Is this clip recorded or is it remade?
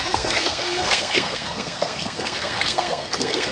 remade